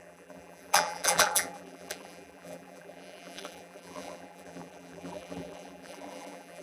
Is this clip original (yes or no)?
no